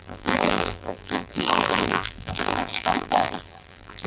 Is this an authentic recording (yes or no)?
no